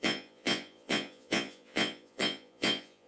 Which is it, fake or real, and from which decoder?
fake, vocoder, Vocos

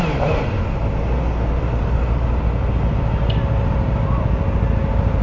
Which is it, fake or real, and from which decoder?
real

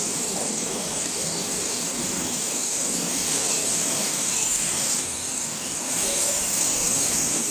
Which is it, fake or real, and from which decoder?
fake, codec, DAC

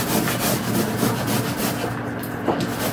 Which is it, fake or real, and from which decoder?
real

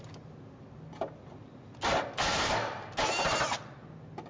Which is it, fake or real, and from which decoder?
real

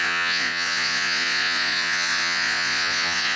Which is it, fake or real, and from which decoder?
fake, vocoder, Vocos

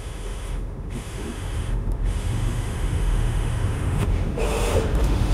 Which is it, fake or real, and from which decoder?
fake, autoencoder, DAC-VAE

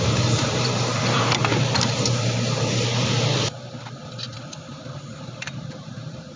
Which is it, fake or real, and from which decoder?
fake, vocoder, BigVGAN v2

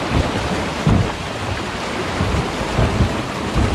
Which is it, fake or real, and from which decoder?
real